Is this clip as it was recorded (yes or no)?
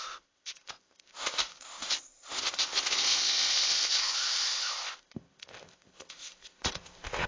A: no